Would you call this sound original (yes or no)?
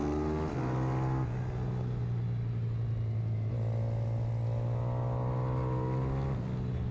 yes